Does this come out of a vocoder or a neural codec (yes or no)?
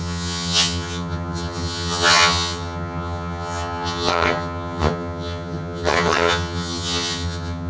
yes